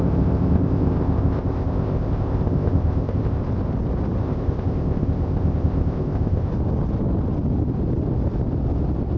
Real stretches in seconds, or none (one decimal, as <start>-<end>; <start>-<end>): 3.4-4.2; 6.5-9.2